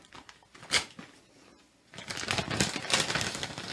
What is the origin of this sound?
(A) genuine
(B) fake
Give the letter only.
A